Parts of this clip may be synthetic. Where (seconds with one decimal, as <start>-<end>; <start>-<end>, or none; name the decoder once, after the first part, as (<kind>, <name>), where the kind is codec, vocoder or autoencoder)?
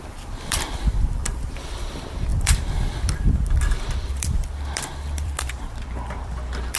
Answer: 0.0-6.8 (vocoder, BigVGAN v2)